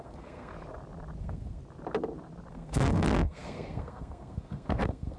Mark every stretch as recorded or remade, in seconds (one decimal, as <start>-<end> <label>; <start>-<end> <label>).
0.0-0.5 remade; 0.5-1.2 recorded; 1.2-1.6 remade; 1.6-2.5 recorded; 2.5-5.2 remade